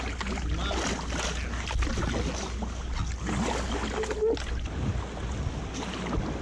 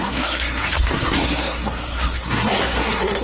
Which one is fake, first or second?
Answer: second